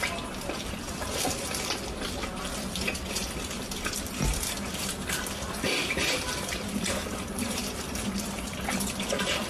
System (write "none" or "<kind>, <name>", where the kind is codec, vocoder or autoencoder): vocoder, BigVGAN v2